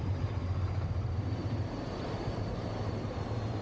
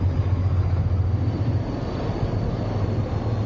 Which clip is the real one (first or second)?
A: second